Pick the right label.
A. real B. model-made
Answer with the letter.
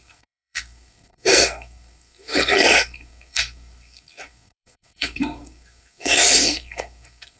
B